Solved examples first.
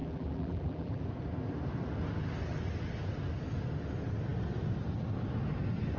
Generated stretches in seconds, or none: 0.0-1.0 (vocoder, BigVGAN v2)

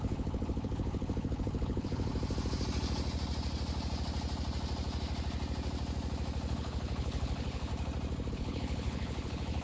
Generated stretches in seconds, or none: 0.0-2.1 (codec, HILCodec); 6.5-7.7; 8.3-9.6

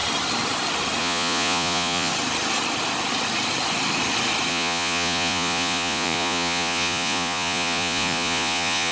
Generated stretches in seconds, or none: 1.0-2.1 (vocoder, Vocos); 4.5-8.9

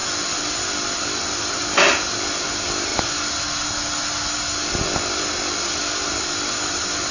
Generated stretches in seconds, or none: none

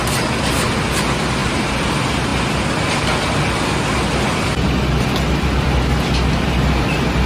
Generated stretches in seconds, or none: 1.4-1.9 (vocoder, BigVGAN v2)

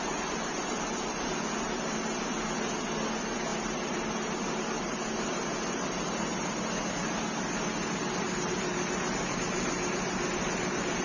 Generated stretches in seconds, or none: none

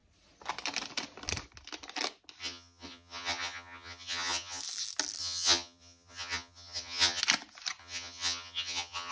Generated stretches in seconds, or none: 2.4-4.6 (vocoder, HiFi-GAN); 5.2-7.2; 7.8-9.1